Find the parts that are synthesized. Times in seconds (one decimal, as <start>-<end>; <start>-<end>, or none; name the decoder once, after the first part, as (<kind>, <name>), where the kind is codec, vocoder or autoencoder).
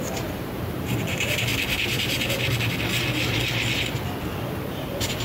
0.0-1.5 (vocoder, BigVGAN v2); 4.6-5.2